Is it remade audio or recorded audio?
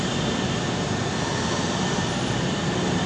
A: recorded